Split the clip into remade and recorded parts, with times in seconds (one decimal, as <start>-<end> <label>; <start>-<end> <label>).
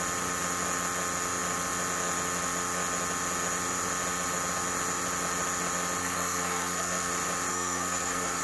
0.0-6.0 recorded; 6.0-7.1 remade; 7.1-7.5 recorded; 7.5-8.4 remade